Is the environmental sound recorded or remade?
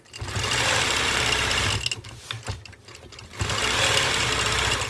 recorded